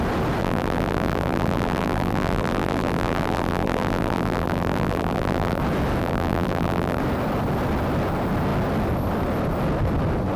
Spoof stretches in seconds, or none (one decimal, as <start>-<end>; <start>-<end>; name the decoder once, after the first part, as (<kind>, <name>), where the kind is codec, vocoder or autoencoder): 0.4-5.6 (vocoder, BigVGAN v2); 6.0-7.0